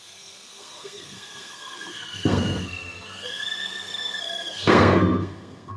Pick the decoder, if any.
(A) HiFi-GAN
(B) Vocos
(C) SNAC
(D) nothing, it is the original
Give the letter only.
C